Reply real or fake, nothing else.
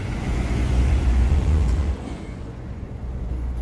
fake